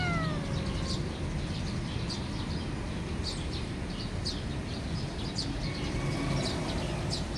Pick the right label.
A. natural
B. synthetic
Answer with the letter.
A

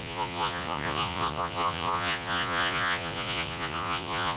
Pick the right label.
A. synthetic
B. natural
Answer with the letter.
A